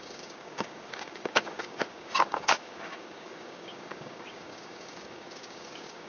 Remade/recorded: remade